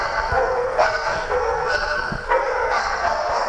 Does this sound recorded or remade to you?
remade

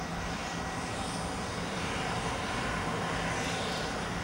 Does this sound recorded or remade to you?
recorded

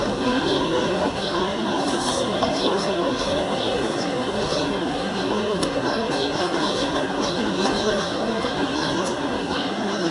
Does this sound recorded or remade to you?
remade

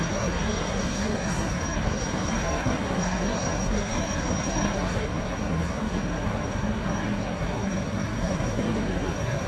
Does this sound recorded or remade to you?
remade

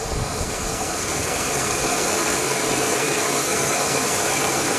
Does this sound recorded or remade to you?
remade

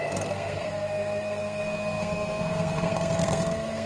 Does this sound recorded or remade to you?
remade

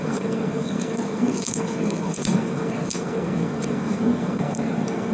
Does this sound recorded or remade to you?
remade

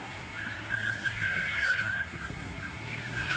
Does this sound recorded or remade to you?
remade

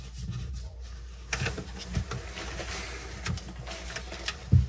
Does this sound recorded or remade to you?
recorded